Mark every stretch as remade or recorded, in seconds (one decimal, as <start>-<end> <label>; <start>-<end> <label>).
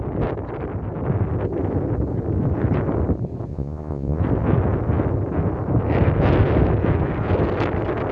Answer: 0.0-3.5 recorded; 3.5-4.2 remade; 4.2-8.1 recorded